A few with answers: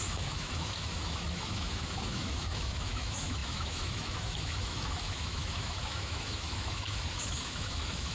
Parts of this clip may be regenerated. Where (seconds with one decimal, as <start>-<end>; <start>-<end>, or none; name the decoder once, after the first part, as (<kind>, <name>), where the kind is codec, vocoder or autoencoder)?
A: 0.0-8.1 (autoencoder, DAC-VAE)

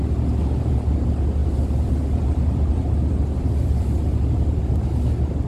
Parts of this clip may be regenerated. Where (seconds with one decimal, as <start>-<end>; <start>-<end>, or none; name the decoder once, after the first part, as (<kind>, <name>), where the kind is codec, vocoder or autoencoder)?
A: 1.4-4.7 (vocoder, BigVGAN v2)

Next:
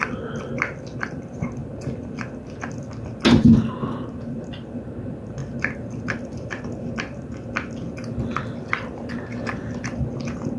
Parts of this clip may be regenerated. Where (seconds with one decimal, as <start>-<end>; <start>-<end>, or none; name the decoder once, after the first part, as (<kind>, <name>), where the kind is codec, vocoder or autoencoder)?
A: none

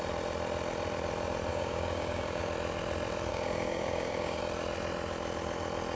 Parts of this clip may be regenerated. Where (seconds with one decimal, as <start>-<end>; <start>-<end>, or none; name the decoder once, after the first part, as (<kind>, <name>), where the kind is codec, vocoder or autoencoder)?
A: 1.5-2.4 (codec, DAC); 3.3-4.4

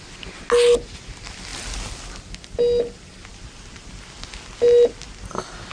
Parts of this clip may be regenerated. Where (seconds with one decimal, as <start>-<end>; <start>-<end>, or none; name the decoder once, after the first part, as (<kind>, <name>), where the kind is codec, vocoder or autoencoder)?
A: none